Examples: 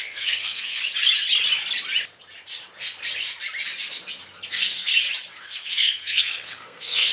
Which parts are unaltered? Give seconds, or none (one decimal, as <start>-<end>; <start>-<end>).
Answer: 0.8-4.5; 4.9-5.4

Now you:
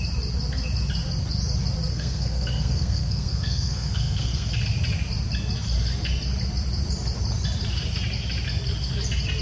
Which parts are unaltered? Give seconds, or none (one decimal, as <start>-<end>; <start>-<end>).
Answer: 0.0-1.9; 4.5-9.4

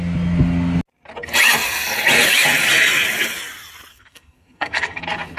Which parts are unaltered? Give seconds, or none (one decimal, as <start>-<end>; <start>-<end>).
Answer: 0.0-3.9; 5.0-5.4

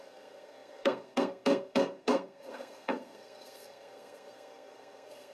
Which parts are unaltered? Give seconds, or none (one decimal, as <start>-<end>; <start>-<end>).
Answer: none

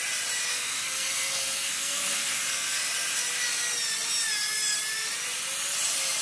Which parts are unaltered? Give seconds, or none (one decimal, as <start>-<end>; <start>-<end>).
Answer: 0.0-0.5; 2.8-6.2

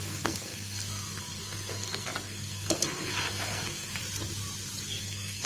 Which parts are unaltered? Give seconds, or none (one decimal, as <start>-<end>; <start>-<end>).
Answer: 4.0-5.0

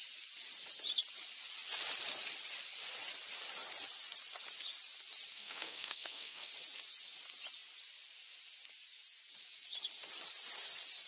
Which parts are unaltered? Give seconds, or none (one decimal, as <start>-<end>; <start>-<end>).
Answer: 0.0-5.3; 6.5-11.1